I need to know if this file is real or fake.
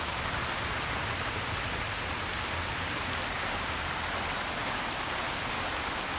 real